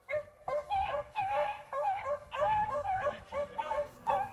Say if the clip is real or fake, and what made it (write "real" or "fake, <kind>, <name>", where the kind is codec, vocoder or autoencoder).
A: fake, codec, SNAC